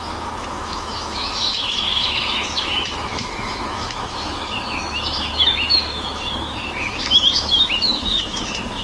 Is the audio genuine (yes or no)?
no